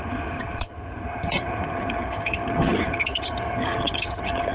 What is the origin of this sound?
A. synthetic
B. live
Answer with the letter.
A